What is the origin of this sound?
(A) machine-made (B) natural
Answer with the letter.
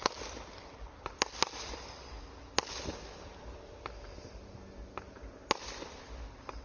B